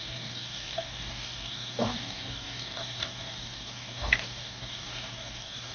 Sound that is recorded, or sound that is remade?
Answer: remade